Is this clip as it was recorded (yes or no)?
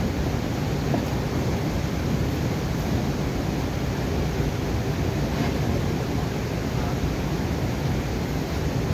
yes